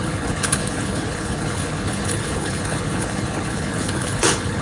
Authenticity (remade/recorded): remade